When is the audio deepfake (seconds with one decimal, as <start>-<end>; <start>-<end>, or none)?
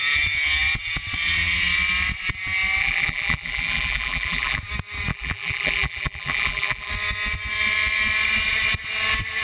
2.8-4.6; 5.1-6.9